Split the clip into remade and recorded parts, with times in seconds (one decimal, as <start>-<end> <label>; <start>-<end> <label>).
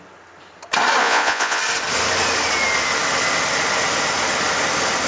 0.0-1.0 recorded; 1.0-1.6 remade; 1.6-5.1 recorded